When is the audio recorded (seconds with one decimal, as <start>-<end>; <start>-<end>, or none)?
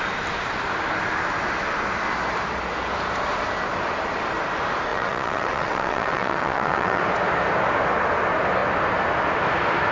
0.0-4.9; 7.0-9.9